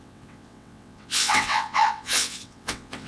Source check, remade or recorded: remade